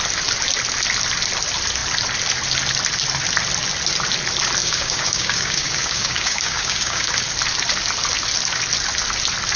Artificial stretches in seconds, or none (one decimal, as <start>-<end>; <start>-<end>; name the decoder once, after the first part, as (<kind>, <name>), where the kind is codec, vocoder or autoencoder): 4.6-7.1 (codec, DAC)